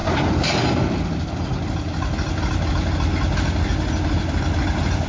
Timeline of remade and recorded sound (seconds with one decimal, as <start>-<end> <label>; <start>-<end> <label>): 0.0-5.1 recorded